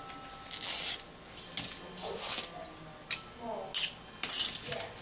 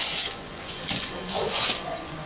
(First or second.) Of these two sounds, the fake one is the second